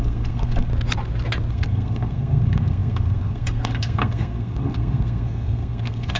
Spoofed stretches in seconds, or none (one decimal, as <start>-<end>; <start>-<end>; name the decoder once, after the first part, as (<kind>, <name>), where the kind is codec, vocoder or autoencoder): 0.0-0.7 (codec, SNAC); 1.5-6.2